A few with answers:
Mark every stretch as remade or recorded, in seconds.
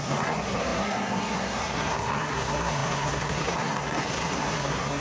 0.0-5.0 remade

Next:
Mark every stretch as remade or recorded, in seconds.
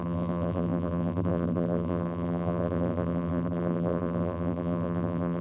0.0-5.4 remade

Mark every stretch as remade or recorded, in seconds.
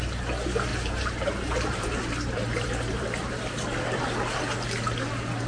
0.0-0.7 recorded; 0.7-4.0 remade; 4.0-5.5 recorded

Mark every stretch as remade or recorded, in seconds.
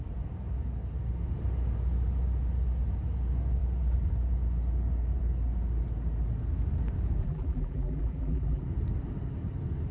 0.0-7.2 recorded; 7.2-8.6 remade; 8.6-9.9 recorded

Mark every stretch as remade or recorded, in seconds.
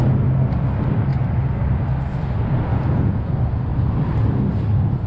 0.0-2.7 recorded; 2.7-3.3 remade; 3.3-5.1 recorded